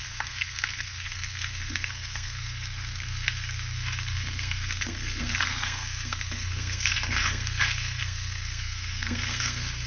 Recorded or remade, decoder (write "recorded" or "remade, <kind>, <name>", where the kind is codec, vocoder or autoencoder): remade, codec, SNAC